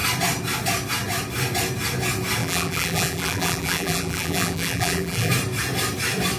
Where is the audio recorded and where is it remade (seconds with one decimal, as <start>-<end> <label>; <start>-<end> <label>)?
0.0-2.4 recorded; 2.4-5.3 remade; 5.3-6.4 recorded